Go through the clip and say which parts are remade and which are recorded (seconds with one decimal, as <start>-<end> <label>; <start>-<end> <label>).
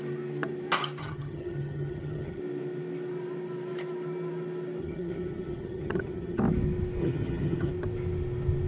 0.0-1.0 recorded; 1.0-2.4 remade; 2.4-4.8 recorded; 4.8-6.4 remade; 6.4-7.0 recorded; 7.0-7.7 remade; 7.7-8.7 recorded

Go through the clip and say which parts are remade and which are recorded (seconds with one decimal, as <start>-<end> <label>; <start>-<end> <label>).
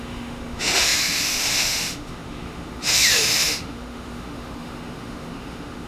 0.0-5.9 remade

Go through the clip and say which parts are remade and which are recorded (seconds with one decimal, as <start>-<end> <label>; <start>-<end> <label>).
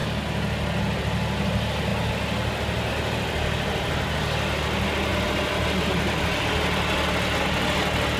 0.0-8.2 recorded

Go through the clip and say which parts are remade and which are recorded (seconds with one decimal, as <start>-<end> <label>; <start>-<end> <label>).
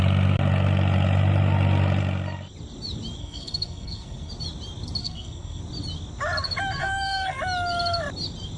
0.0-3.2 recorded; 3.2-4.3 remade; 4.3-5.0 recorded; 5.0-5.6 remade; 5.6-6.8 recorded; 6.8-7.4 remade; 7.4-8.6 recorded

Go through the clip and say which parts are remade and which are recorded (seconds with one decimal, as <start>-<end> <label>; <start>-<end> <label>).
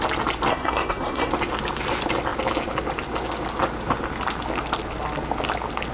0.0-0.5 recorded; 0.5-1.3 remade; 1.3-5.9 recorded